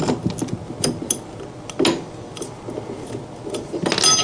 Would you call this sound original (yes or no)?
yes